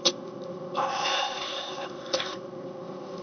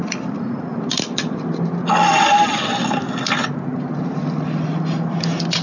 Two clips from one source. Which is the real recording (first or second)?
second